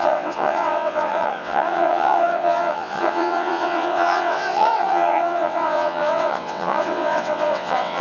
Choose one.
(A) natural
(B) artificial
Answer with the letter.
B